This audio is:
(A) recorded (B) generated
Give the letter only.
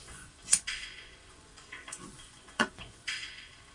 B